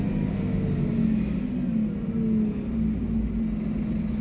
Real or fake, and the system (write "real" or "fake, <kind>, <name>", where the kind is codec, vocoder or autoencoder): real